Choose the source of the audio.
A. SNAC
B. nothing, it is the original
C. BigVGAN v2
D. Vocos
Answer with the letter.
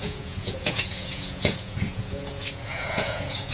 D